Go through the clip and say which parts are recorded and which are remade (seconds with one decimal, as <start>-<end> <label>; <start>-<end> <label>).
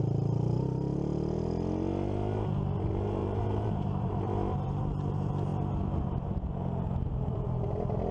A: 0.0-3.2 recorded; 3.2-4.1 remade; 4.1-8.1 recorded